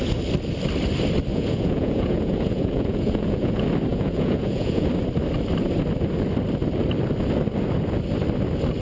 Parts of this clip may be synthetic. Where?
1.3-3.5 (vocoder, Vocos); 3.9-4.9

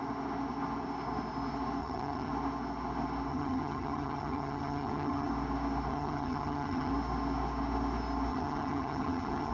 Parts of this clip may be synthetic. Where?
1.8-2.3 (vocoder, HiFi-GAN); 3.3-5.3; 5.9-6.9; 8.3-9.5

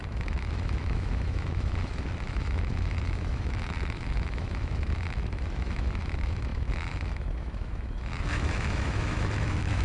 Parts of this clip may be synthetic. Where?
0.0-9.8 (autoencoder, DAC-VAE)

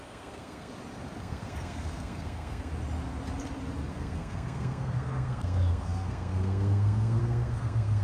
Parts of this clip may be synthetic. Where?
0.0-0.7 (codec, SNAC); 1.2-2.7; 3.9-8.0

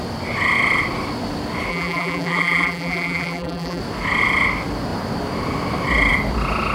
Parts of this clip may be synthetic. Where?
1.7-3.8 (vocoder, BigVGAN v2)

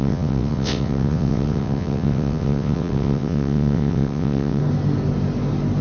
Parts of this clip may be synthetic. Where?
0.0-4.6 (vocoder, WaveNeXt)

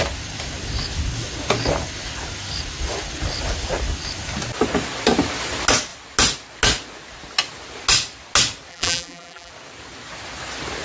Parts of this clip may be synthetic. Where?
8.7-9.5 (vocoder, BigVGAN v2)

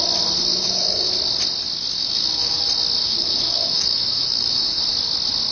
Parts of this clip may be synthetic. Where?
0.5-1.1 (autoencoder, DAC-VAE); 2.0-2.6; 3.0-4.8